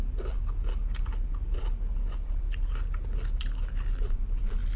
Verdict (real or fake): real